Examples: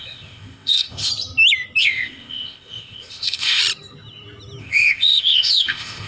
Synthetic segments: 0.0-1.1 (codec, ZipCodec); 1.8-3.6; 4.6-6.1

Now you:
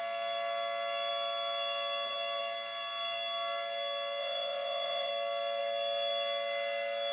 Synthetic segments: 4.2-5.1 (vocoder, Vocos)

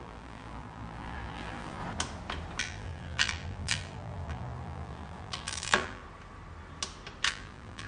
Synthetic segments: 0.0-1.8 (vocoder, BigVGAN v2); 2.6-6.0; 7.3-7.9

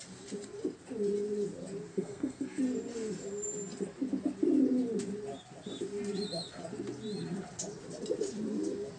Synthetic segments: 1.9-2.6 (codec, SNAC)